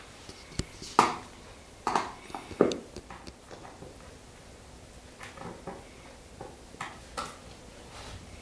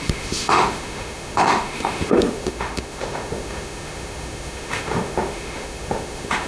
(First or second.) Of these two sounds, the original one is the first